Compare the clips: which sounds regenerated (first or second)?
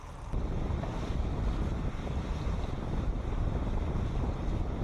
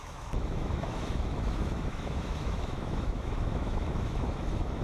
second